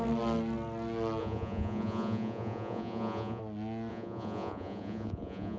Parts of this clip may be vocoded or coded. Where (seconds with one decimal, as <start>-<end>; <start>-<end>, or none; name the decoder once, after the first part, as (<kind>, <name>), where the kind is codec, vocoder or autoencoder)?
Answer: 1.2-3.4 (vocoder, Vocos); 3.9-5.6